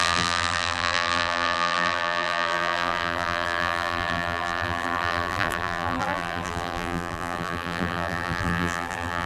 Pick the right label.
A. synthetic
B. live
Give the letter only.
A